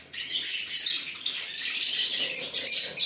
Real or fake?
real